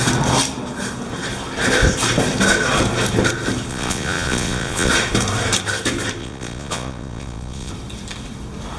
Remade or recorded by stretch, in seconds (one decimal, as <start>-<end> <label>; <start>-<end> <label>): 0.0-3.7 recorded; 3.7-4.9 remade; 4.9-6.2 recorded; 6.2-7.7 remade; 7.7-8.8 recorded